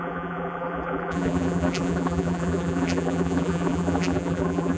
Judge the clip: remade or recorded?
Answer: remade